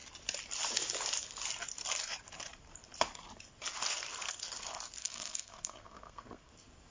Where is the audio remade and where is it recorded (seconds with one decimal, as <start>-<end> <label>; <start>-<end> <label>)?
0.0-5.0 recorded; 5.0-6.5 remade; 6.5-6.9 recorded